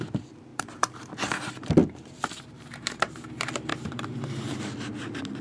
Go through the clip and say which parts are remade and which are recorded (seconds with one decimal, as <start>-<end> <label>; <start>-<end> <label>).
0.0-0.5 recorded; 0.5-1.1 remade; 1.1-1.8 recorded; 1.8-3.3 remade; 3.3-3.7 recorded; 3.7-4.6 remade; 4.6-5.4 recorded